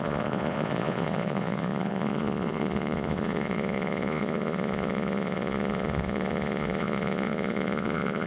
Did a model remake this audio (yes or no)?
yes